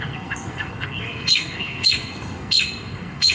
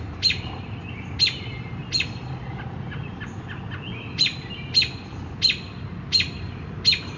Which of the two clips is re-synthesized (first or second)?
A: first